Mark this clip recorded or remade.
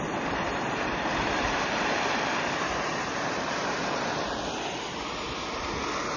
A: remade